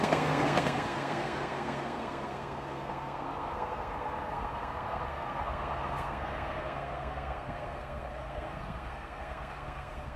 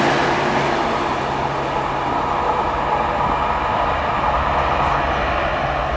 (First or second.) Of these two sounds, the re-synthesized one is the first